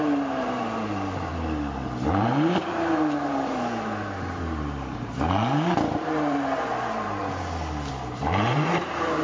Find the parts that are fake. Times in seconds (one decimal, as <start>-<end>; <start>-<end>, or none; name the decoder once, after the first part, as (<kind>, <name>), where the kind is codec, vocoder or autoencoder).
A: 0.0-1.3 (vocoder, BigVGAN v2); 2.1-7.2; 7.9-9.2